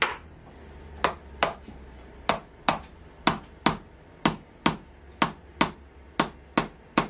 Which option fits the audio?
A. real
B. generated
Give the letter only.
A